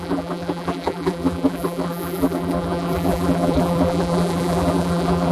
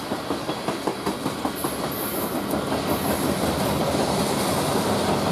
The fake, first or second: first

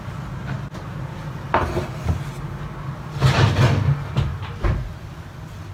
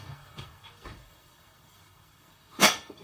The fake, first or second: second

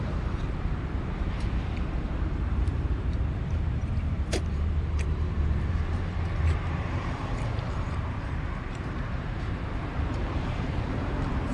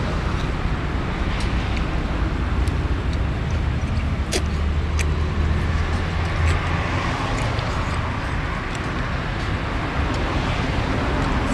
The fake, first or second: first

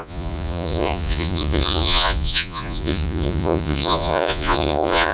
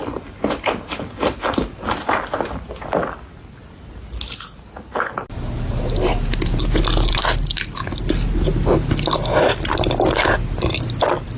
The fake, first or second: first